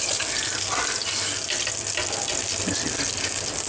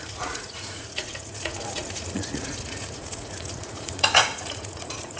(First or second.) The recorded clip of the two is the first